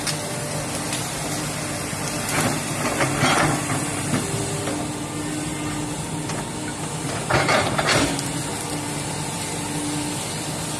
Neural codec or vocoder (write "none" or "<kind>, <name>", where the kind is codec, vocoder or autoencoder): none